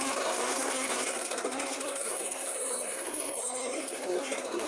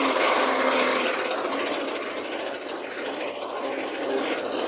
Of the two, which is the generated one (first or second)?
first